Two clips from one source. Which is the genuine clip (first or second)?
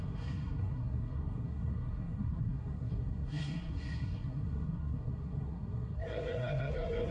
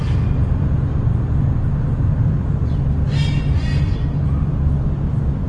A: second